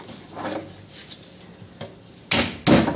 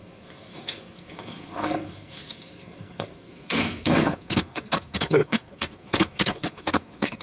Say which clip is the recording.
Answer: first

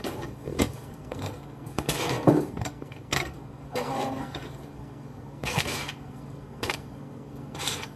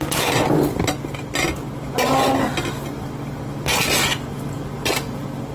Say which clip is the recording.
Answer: second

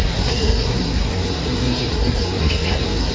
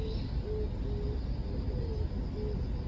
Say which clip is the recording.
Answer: second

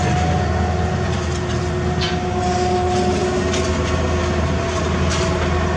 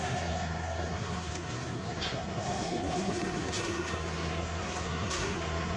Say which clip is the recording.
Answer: first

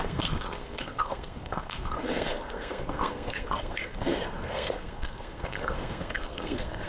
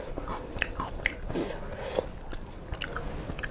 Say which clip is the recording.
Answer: second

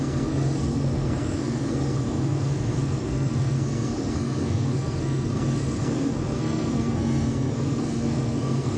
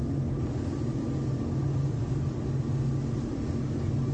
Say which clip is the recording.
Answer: second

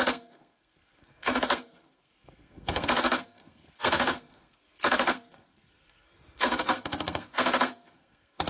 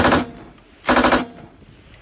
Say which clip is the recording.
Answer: second